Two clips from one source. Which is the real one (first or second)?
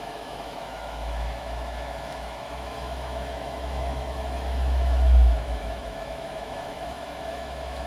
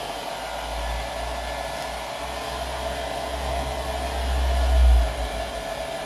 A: second